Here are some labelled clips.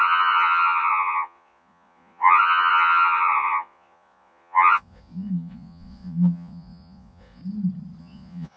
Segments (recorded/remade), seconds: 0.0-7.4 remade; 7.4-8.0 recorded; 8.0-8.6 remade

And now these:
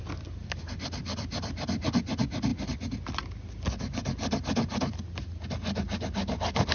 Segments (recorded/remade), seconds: 0.0-6.7 recorded

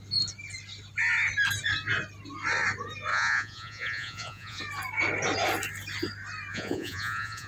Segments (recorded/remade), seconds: 0.0-3.1 recorded; 3.1-4.6 remade; 4.6-6.5 recorded; 6.5-7.5 remade

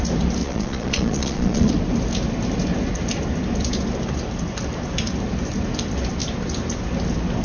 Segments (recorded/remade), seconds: 0.0-0.4 recorded; 0.4-1.7 remade; 1.7-7.4 recorded

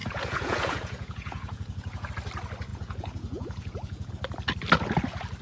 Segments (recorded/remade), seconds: 0.0-2.1 remade; 2.1-2.7 recorded; 2.7-4.1 remade; 4.1-5.4 recorded

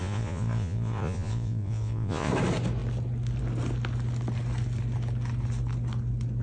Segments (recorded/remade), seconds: 0.0-2.3 remade; 2.3-6.4 recorded

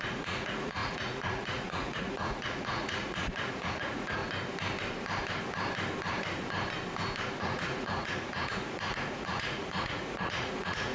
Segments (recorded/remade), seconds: 0.0-4.2 remade; 4.2-7.4 recorded; 7.4-10.9 remade

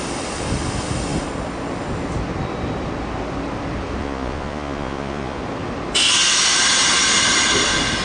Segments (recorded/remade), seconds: 0.0-4.0 recorded; 4.0-5.4 remade; 5.4-8.0 recorded